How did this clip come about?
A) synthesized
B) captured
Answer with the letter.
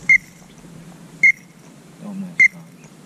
B